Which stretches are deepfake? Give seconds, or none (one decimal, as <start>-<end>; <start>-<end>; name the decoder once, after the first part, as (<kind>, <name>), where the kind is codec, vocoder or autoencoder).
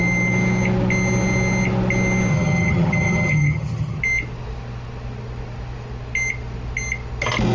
2.3-4.0 (vocoder, HiFi-GAN)